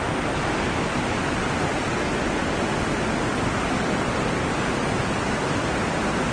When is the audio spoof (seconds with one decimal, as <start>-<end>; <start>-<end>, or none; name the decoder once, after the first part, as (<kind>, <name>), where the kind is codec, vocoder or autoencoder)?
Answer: none